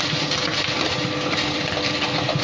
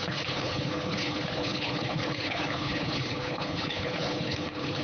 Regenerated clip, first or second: second